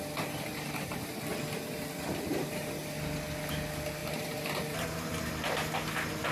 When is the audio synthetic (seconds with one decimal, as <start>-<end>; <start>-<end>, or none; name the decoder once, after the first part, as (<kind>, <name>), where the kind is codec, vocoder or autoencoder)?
0.5-1.0 (vocoder, BigVGAN v2); 4.0-5.3